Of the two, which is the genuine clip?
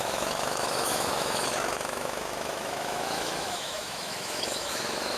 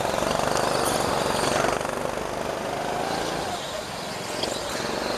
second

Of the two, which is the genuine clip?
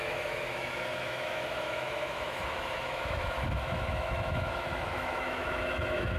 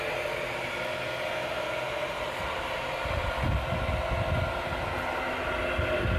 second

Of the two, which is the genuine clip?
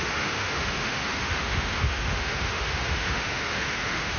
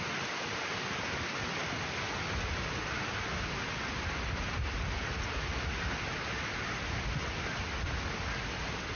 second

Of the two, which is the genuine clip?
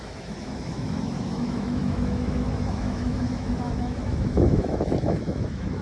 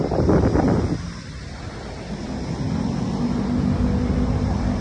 second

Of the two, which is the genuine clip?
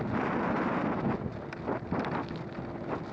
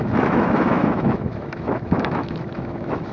first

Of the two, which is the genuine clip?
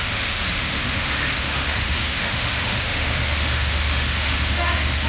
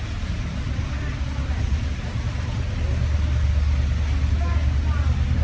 second